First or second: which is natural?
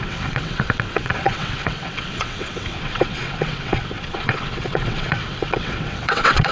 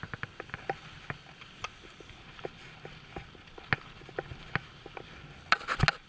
second